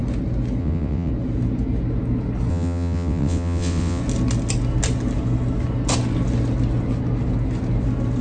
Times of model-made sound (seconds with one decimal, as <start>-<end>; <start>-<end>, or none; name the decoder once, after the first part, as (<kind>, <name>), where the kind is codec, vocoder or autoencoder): 0.6-1.1 (vocoder, WaveNeXt); 2.5-4.0